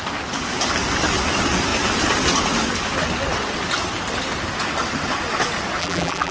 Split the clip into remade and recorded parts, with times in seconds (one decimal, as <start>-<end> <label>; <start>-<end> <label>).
0.0-5.8 recorded; 5.8-6.3 remade